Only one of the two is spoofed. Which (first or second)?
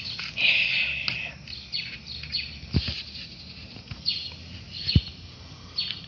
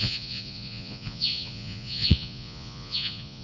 second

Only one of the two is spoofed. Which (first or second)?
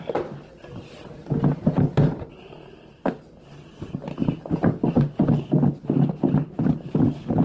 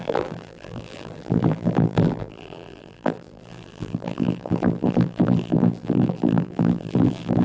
second